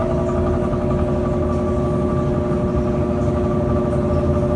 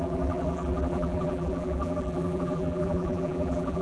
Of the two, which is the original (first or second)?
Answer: first